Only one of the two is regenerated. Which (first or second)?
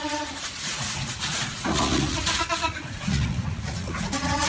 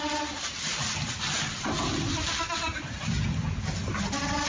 first